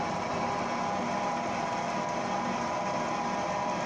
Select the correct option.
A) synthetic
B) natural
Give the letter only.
B